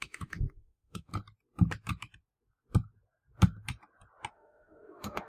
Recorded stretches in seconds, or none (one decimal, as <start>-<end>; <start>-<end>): 1.1-4.3